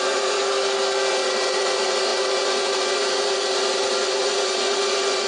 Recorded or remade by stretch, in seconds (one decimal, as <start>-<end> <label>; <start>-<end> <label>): 0.0-0.4 remade; 0.4-1.1 recorded; 1.1-5.3 remade